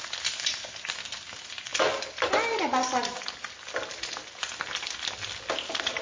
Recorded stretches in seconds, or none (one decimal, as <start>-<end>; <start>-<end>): 0.0-6.0